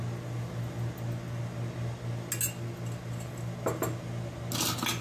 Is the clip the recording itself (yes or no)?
yes